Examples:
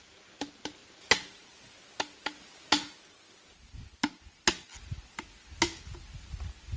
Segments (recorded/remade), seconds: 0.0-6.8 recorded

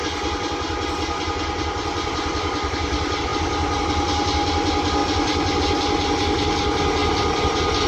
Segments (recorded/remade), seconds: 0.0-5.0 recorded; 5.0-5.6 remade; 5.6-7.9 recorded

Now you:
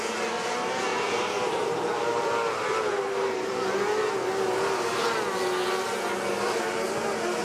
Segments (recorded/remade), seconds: 0.0-0.9 recorded; 0.9-3.8 remade; 3.8-7.4 recorded

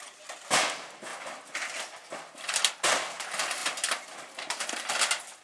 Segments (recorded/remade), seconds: 0.0-1.1 remade; 1.1-1.8 recorded; 1.8-5.4 remade

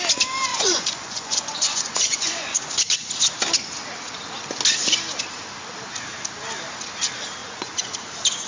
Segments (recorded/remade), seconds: 0.0-0.5 recorded; 0.5-3.1 remade; 3.1-7.4 recorded; 7.4-7.9 remade; 7.9-8.5 recorded